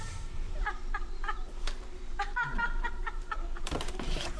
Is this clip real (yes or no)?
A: no